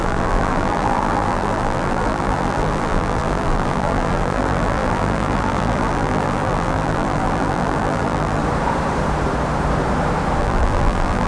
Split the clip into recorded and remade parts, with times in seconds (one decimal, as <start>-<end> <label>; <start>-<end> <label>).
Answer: 0.0-8.4 remade; 8.4-10.4 recorded; 10.4-11.3 remade